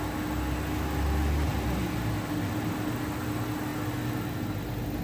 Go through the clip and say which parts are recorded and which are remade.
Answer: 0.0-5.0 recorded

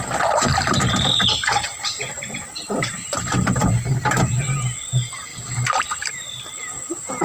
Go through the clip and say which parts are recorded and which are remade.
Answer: 0.0-1.7 recorded; 1.7-3.9 remade; 3.9-5.3 recorded; 5.3-6.1 remade; 6.1-7.2 recorded

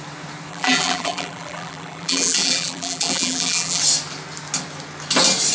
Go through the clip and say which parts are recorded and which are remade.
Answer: 0.0-0.5 recorded; 0.5-3.8 remade; 3.8-5.5 recorded

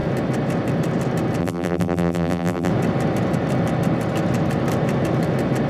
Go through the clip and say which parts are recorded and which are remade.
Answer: 0.0-1.4 recorded; 1.4-2.7 remade; 2.7-5.7 recorded

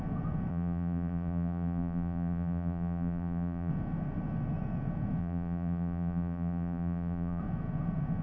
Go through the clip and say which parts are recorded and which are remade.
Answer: 0.0-0.5 recorded; 0.5-3.7 remade; 3.7-5.2 recorded; 5.2-7.4 remade; 7.4-8.2 recorded

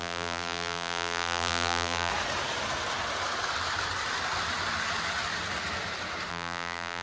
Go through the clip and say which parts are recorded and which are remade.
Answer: 0.0-2.1 remade; 2.1-6.3 recorded; 6.3-7.0 remade